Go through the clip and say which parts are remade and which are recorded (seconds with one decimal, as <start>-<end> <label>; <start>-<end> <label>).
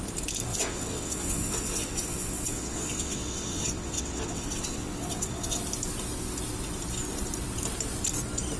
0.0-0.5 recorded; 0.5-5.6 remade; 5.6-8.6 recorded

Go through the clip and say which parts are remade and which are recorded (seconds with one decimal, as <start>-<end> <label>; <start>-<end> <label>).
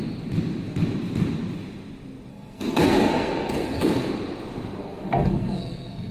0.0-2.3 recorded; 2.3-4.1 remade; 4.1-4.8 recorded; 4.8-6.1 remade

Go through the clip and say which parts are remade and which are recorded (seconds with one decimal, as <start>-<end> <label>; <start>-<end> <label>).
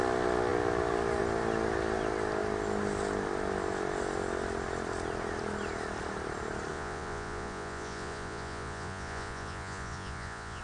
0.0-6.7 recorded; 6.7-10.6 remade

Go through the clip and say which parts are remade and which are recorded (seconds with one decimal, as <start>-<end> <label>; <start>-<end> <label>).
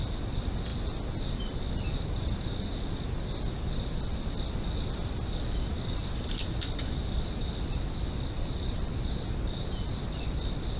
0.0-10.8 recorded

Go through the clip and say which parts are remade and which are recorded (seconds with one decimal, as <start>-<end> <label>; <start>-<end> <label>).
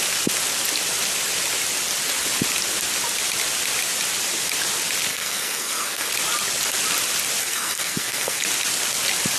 0.0-5.1 recorded; 5.1-6.1 remade; 6.1-7.4 recorded; 7.4-8.4 remade; 8.4-9.4 recorded